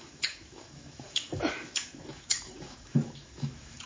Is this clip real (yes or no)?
no